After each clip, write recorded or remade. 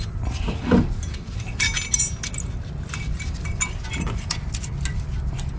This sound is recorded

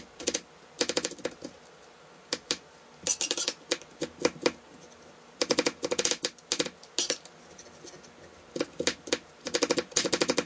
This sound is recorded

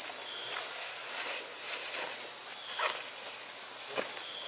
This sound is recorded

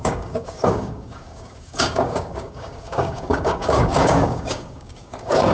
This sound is remade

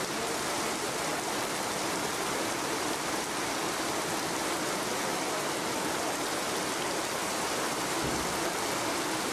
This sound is remade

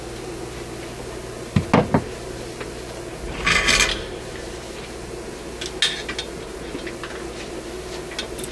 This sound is recorded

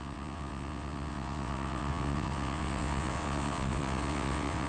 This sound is remade